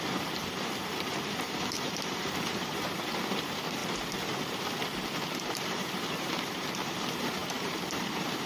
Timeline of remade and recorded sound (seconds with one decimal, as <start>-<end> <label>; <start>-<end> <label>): 0.0-3.8 remade; 3.8-5.4 recorded; 5.4-8.5 remade

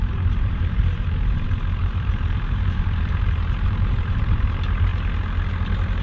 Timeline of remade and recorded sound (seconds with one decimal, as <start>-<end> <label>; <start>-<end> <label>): 0.0-4.9 remade; 4.9-6.0 recorded

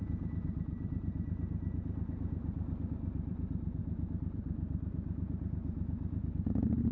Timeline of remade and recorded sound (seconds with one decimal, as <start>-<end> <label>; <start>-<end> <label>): 0.0-6.9 remade